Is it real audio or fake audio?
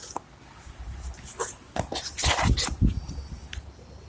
real